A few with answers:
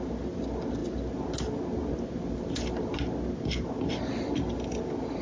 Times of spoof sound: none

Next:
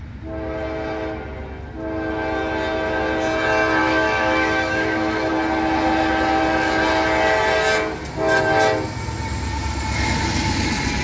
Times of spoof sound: 3.8-5.3

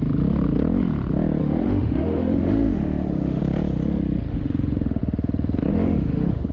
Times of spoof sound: 1.4-3.4; 4.3-5.0; 5.7-6.5

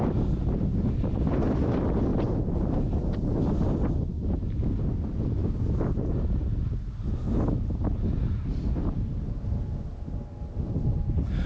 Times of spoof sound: none

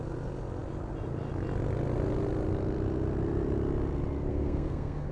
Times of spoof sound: 4.3-5.1

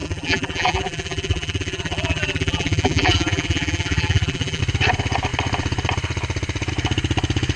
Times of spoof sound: 0.0-4.6